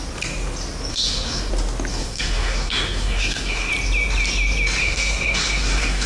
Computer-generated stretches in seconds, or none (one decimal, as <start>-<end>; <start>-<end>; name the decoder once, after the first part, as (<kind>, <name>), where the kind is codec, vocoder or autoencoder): 0.9-1.5 (codec, SNAC); 1.9-3.7; 4.8-6.1